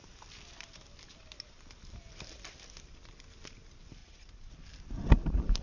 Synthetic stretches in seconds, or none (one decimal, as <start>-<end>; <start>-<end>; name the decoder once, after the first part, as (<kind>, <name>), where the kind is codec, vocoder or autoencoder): 4.0-4.5 (vocoder, Vocos)